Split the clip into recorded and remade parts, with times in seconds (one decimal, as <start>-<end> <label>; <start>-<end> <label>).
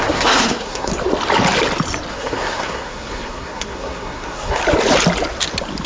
0.0-0.9 remade; 0.9-2.1 recorded; 2.1-4.6 remade; 4.6-5.9 recorded